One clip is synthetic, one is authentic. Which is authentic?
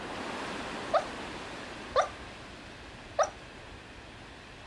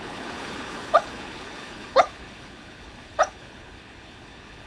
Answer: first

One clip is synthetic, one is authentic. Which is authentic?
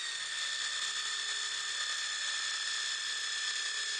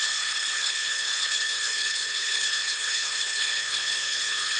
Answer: first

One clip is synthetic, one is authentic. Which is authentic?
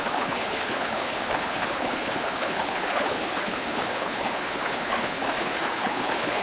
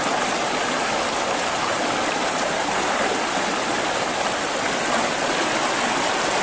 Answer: second